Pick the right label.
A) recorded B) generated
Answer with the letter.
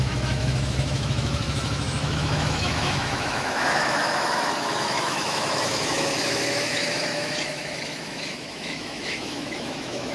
B